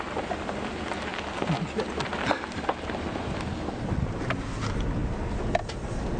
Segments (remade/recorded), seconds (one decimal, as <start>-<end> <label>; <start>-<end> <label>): 0.0-6.2 recorded